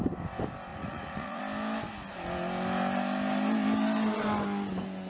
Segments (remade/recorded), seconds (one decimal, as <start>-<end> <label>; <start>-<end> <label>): 0.0-0.7 recorded; 0.7-1.4 remade; 1.4-5.1 recorded